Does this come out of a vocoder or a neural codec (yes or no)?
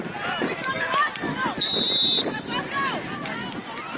yes